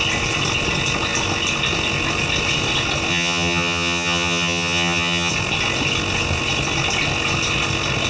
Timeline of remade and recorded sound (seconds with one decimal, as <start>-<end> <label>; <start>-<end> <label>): 0.0-3.1 recorded; 3.1-5.3 remade; 5.3-8.1 recorded